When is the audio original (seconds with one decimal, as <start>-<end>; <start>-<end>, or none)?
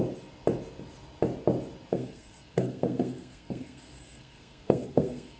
0.0-1.9